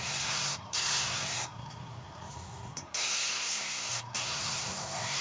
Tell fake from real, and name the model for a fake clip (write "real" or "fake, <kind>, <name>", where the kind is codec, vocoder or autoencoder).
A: fake, codec, SNAC